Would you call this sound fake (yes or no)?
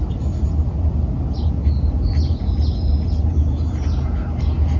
no